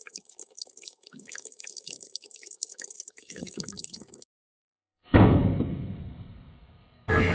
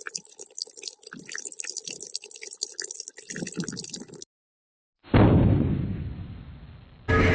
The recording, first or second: second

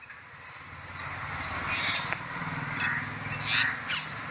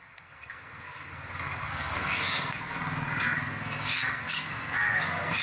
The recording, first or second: first